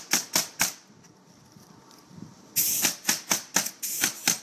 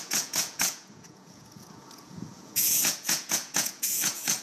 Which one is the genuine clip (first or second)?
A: first